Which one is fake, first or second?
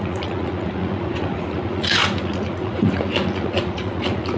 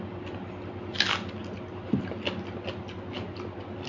first